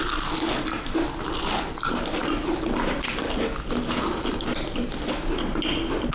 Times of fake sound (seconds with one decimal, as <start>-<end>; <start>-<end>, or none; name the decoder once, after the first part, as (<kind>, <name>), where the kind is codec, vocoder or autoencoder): 2.2-3.2 (vocoder, BigVGAN v2)